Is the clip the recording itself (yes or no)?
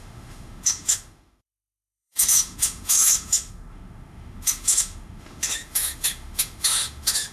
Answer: no